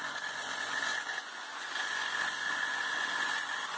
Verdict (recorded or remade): remade